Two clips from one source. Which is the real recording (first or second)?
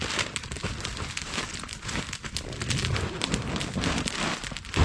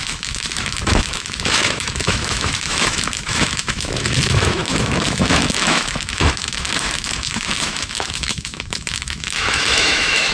first